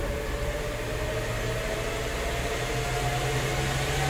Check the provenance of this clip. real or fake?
real